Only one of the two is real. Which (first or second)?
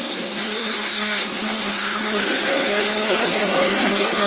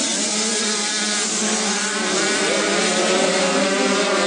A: second